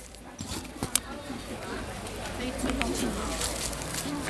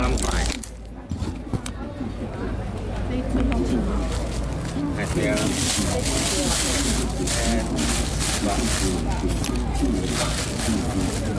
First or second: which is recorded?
second